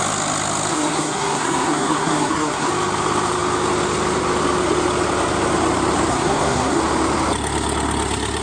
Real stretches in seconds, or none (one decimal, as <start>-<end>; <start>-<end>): 0.0-0.7; 2.7-6.1; 6.8-8.4